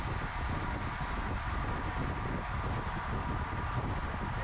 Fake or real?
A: real